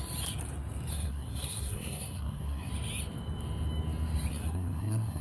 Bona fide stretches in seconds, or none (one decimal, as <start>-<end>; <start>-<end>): 0.0-0.9; 2.7-4.3